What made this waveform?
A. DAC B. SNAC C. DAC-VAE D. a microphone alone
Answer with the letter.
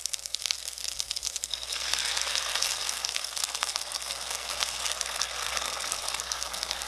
B